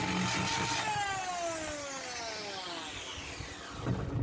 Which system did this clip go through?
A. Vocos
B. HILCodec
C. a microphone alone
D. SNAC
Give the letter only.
C